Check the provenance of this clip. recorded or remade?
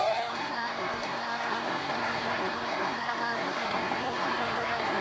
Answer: remade